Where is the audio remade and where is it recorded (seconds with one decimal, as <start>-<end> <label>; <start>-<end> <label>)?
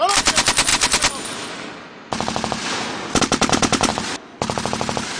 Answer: 0.0-5.2 recorded